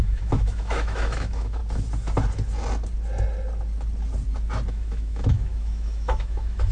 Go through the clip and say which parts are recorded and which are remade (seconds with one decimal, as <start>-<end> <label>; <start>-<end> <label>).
0.0-1.6 remade; 1.6-4.7 recorded; 4.7-6.7 remade